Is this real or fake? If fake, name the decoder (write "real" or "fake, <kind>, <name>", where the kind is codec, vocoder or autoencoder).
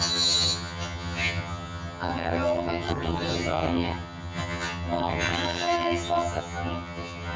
fake, vocoder, HiFi-GAN